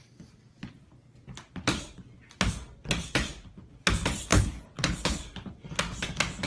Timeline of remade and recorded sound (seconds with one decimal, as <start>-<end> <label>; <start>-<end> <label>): 0.0-4.3 recorded; 4.3-5.2 remade; 5.2-6.5 recorded